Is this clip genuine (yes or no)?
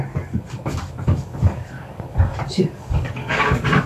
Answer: no